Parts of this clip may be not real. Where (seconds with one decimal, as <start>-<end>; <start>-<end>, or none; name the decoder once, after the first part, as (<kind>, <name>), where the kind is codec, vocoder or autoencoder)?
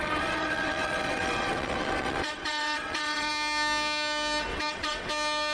0.0-3.3 (vocoder, WaveNeXt); 4.5-5.1